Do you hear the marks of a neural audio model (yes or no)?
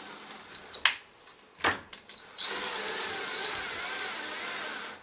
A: no